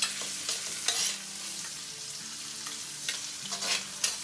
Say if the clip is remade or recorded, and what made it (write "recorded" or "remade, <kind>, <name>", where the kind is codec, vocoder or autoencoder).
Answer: recorded